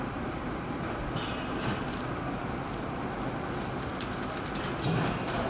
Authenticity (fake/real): real